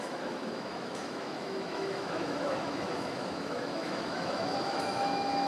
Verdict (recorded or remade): remade